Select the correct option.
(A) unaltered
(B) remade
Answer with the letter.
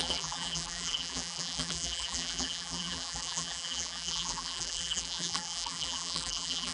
B